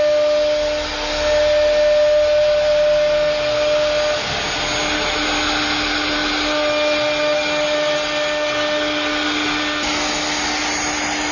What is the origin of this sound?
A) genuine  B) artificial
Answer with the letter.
A